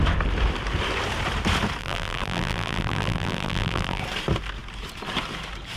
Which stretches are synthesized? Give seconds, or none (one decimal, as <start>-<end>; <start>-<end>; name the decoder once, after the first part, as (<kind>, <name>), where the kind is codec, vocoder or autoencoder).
1.8-4.0 (vocoder, BigVGAN v2)